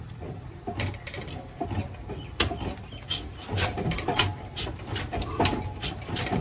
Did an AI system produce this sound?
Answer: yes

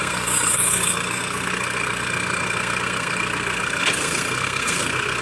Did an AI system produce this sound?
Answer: yes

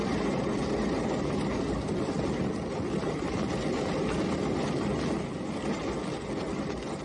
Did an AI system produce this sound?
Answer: no